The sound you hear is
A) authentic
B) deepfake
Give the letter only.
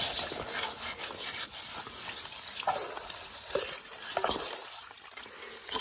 A